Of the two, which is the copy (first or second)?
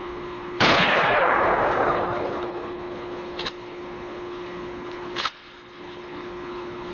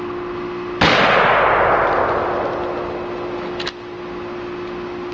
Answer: first